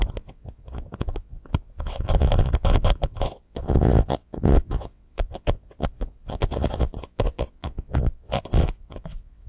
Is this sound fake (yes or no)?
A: yes